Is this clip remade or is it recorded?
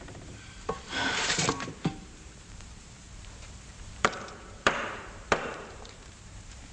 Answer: remade